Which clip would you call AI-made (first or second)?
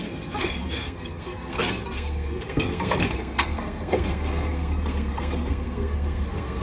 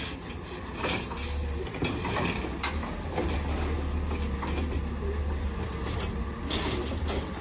first